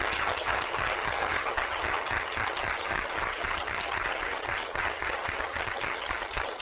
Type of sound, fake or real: fake